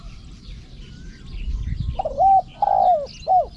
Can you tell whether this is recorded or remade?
recorded